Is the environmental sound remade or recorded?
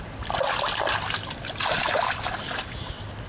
recorded